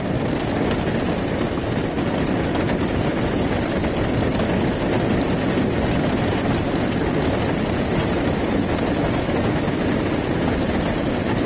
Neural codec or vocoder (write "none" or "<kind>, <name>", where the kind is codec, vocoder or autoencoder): none